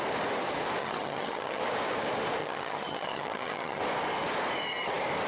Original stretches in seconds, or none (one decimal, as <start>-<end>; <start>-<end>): 0.0-0.8; 1.6-2.4; 3.8-5.3